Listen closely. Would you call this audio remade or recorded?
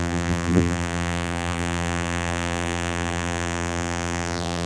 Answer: remade